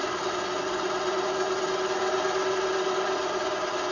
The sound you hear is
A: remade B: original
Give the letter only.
B